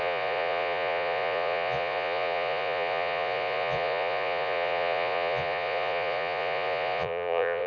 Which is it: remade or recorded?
remade